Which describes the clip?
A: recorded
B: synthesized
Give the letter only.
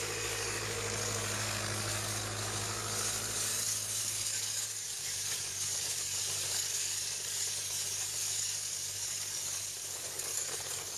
B